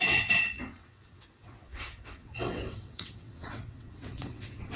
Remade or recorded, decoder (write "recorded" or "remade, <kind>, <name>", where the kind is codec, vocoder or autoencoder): remade, vocoder, WaveNeXt